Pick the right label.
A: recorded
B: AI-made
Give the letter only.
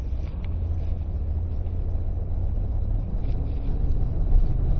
A